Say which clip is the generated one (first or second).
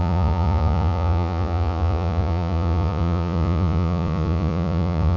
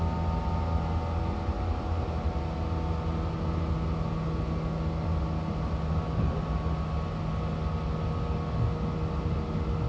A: first